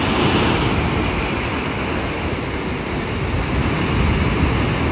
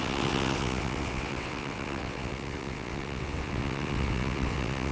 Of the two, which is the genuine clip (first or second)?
first